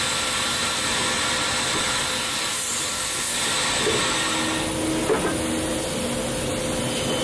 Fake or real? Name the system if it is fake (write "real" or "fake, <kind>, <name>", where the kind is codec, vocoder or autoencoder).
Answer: real